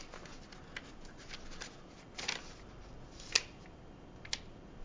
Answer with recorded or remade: recorded